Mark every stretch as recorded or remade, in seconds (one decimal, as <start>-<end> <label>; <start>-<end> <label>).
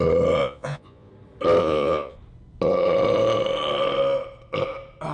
0.0-0.4 recorded; 0.4-1.1 remade; 1.1-1.6 recorded; 1.6-2.2 remade; 2.2-5.1 recorded